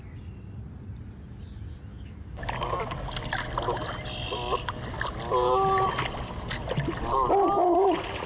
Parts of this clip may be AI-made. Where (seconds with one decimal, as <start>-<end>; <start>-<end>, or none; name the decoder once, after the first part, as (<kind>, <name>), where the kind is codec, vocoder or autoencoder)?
1.9-2.4 (codec, DAC)

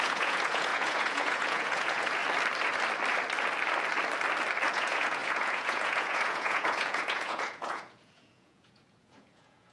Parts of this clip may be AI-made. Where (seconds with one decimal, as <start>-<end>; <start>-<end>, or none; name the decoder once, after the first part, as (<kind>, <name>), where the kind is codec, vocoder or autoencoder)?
0.0-2.2 (vocoder, Vocos); 4.7-9.7

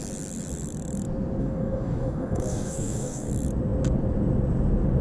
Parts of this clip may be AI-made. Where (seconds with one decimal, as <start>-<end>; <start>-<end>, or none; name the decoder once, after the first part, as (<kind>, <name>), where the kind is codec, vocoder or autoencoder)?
1.4-3.3 (codec, DAC)

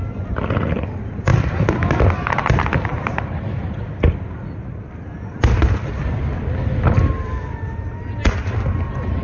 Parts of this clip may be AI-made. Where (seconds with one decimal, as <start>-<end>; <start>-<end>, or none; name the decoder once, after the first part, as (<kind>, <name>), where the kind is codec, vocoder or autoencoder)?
2.9-7.6 (vocoder, BigVGAN v2)

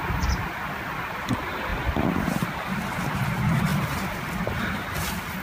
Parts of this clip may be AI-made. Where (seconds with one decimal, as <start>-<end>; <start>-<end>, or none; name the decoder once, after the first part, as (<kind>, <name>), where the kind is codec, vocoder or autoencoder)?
3.7-4.3 (vocoder, BigVGAN v2)

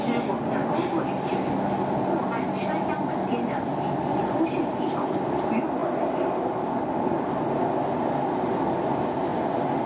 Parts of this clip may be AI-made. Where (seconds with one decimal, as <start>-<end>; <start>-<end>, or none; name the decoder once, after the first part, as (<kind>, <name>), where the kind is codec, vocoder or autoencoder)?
none

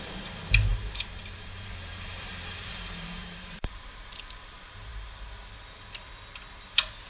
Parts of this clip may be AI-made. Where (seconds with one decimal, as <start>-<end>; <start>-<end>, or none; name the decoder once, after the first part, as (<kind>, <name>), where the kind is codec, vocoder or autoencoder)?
0.7-3.8 (vocoder, BigVGAN v2)